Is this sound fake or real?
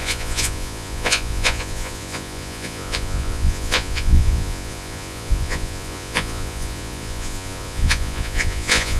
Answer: fake